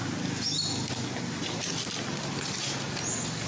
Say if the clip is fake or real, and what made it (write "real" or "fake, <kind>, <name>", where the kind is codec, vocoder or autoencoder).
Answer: real